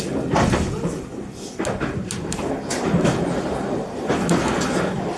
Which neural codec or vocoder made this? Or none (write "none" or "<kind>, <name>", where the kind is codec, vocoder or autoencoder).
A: none